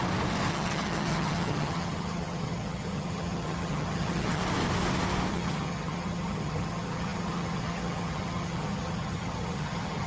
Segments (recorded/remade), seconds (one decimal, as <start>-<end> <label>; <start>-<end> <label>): 0.0-0.5 recorded; 0.5-4.4 remade; 4.4-5.3 recorded; 5.3-10.1 remade